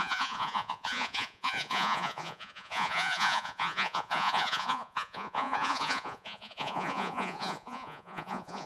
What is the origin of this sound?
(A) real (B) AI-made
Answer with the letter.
B